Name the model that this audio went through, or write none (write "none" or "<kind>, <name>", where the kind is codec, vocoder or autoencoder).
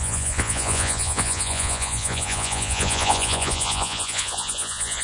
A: vocoder, Vocos